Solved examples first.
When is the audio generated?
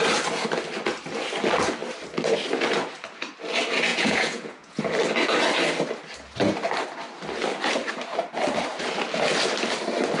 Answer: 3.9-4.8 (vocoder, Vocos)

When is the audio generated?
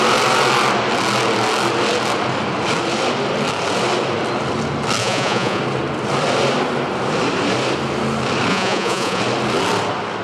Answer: 5.0-5.6 (vocoder, Vocos); 8.5-9.2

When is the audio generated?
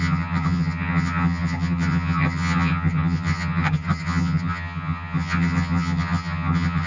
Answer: 0.0-6.9 (vocoder, HiFi-GAN)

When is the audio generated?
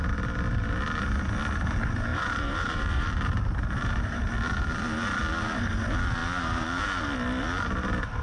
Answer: 2.1-4.2 (vocoder, BigVGAN v2)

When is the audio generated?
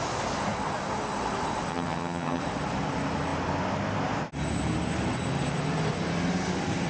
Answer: 1.7-2.4 (vocoder, HiFi-GAN)